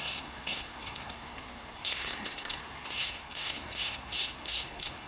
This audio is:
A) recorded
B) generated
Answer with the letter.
B